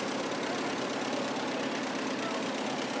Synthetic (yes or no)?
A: no